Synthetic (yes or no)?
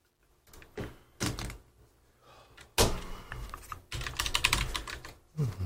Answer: no